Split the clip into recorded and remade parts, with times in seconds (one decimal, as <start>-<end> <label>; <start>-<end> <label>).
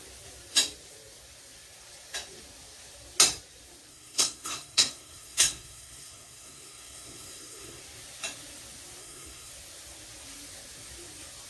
0.0-3.9 recorded; 3.9-7.8 remade; 7.8-9.0 recorded; 9.0-9.5 remade; 9.5-11.5 recorded